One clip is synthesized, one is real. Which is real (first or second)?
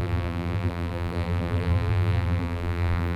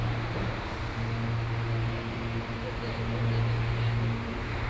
second